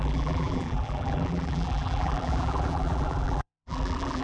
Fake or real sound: fake